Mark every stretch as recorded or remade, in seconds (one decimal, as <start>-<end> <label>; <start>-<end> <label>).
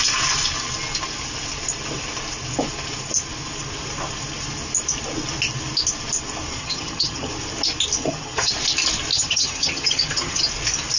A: 0.0-6.6 recorded; 6.6-7.3 remade; 7.3-8.0 recorded; 8.0-8.5 remade; 8.5-9.1 recorded; 9.1-10.4 remade; 10.4-11.0 recorded